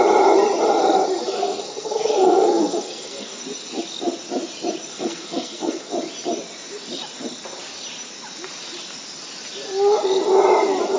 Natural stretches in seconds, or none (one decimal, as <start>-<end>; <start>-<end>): 0.0-1.2; 3.4-4.9; 5.9-11.0